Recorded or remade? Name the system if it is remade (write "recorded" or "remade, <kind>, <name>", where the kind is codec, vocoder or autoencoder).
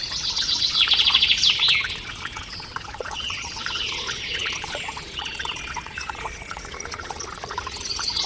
remade, vocoder, Vocos